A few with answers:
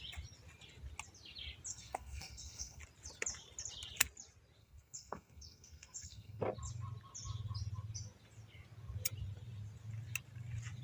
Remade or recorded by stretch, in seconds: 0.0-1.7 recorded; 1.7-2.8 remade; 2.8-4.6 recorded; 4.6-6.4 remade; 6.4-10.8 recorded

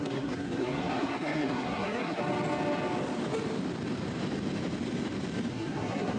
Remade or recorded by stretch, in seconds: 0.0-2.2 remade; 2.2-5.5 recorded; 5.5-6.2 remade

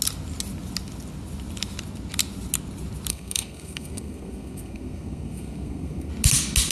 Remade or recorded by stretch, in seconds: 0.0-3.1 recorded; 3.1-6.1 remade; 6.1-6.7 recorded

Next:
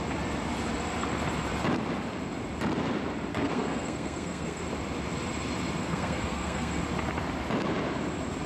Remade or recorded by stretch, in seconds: 0.0-3.3 recorded; 3.3-4.6 remade; 4.6-5.8 recorded; 5.8-6.8 remade; 6.8-8.5 recorded

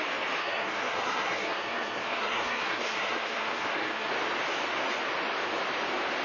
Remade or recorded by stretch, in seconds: 0.0-0.4 recorded; 0.4-4.1 remade; 4.1-6.2 recorded

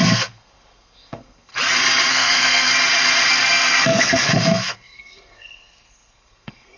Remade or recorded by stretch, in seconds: 0.0-1.5 remade; 1.5-2.1 recorded; 2.1-2.7 remade; 2.7-3.3 recorded; 3.3-6.8 remade

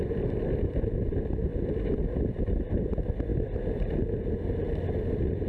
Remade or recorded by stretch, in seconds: 0.0-5.5 recorded

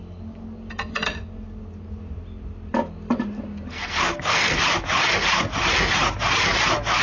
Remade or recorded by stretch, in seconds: 0.0-3.7 recorded; 3.7-4.6 remade; 4.6-7.0 recorded